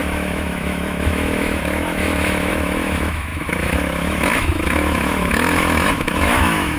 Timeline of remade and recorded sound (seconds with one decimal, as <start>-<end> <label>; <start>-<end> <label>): 0.0-6.8 remade